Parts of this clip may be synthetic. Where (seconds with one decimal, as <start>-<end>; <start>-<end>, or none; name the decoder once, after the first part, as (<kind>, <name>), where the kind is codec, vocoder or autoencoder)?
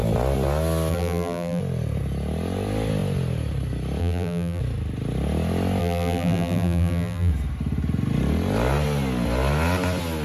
0.9-1.6 (vocoder, BigVGAN v2); 4.0-4.6; 5.8-7.3